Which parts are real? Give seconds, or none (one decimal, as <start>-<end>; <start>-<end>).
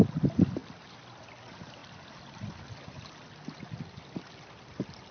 0.0-5.1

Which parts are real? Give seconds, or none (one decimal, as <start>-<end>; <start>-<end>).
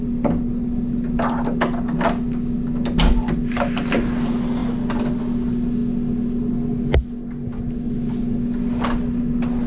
0.0-9.7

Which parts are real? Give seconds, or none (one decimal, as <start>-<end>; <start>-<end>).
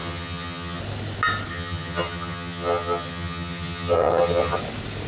0.8-1.5; 4.6-5.1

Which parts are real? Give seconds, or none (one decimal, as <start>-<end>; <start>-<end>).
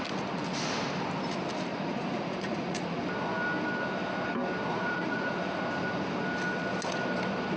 0.0-1.7; 3.0-4.7; 5.6-7.6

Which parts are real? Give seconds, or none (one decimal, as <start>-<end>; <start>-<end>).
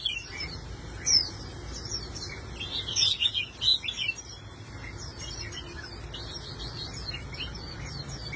0.0-8.4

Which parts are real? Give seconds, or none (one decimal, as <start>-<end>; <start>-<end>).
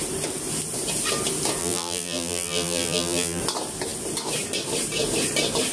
0.0-1.6; 3.4-5.7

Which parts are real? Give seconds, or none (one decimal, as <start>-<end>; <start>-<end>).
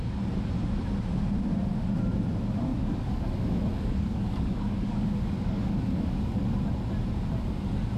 0.0-2.7; 3.3-3.7; 6.4-8.0